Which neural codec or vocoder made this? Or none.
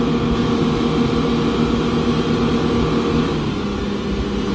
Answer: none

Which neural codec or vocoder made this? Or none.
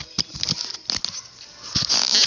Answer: none